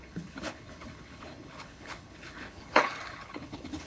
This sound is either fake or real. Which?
fake